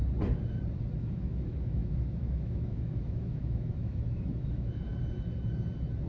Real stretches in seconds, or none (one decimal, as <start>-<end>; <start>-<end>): 0.0-1.0; 4.9-6.1